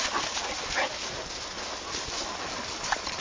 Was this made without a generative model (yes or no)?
yes